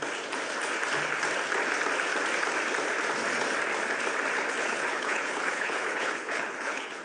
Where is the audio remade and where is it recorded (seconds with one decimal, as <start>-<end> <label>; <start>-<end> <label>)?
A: 0.0-4.6 recorded; 4.6-7.0 remade